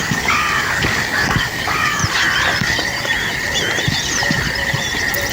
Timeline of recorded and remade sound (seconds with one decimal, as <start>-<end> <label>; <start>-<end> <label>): 0.0-2.0 remade; 2.0-5.3 recorded